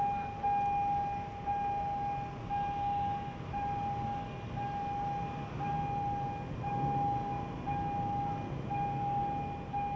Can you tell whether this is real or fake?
real